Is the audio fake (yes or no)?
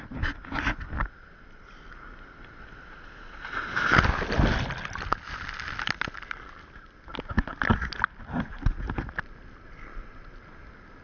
no